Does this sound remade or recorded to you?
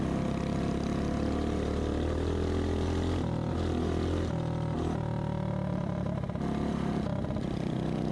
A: recorded